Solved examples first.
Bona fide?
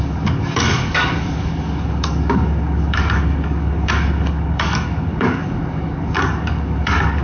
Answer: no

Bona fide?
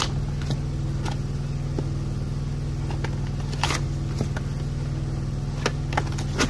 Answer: yes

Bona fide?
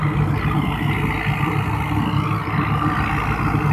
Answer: yes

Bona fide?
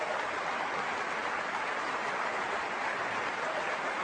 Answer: yes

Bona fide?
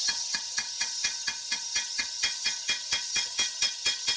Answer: no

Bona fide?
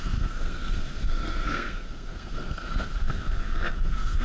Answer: no